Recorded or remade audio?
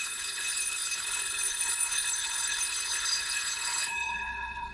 remade